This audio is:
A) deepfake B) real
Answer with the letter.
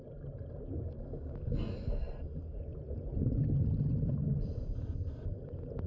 B